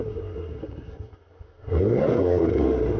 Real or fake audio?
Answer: fake